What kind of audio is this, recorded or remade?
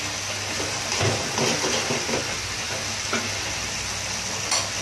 recorded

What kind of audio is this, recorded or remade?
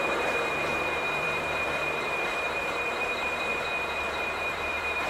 remade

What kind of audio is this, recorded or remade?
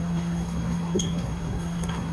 remade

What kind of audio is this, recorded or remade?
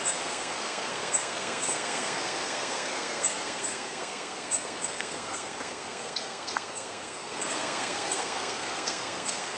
remade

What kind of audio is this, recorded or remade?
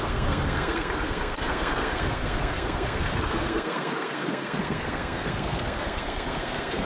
remade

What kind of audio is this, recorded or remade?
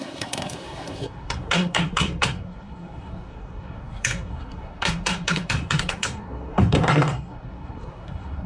remade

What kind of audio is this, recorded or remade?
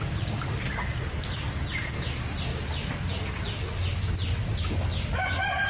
recorded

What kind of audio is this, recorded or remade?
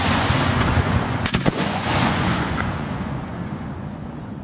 remade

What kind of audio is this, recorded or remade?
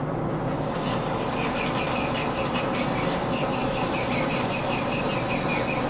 recorded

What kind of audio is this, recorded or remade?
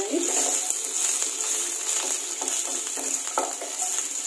recorded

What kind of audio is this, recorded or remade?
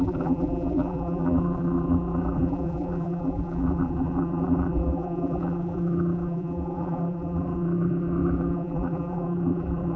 remade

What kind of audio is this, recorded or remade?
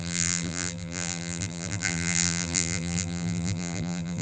remade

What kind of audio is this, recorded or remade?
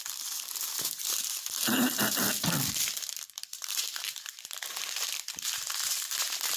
remade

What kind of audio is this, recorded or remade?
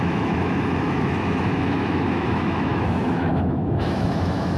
remade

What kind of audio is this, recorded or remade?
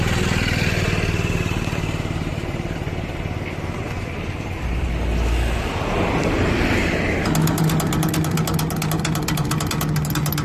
recorded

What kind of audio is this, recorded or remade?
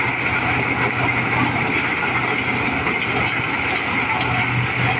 recorded